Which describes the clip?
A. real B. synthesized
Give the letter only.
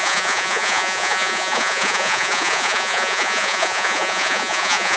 B